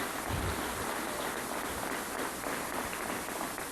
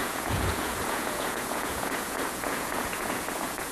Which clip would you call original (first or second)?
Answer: first